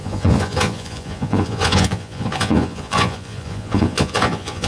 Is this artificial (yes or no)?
yes